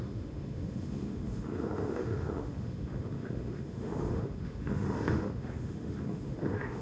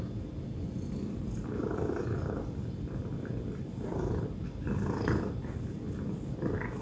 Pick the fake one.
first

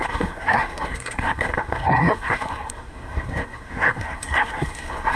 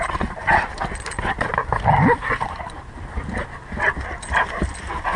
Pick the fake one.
first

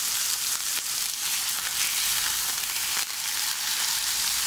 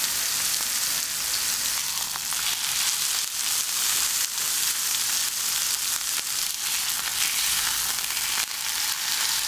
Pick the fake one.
first